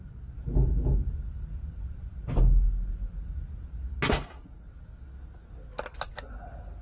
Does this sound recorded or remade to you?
recorded